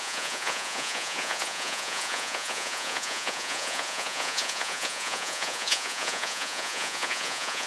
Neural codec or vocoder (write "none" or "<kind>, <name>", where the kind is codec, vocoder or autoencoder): vocoder, Vocos